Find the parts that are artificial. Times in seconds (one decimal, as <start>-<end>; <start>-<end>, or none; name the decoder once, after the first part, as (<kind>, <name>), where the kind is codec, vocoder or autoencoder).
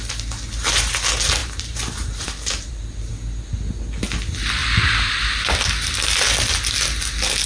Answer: 1.4-3.1 (vocoder, BigVGAN v2); 4.6-5.5